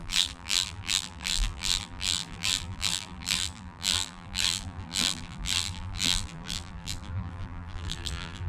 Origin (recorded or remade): remade